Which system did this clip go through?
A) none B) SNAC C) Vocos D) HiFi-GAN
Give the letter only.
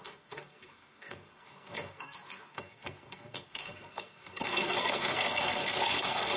B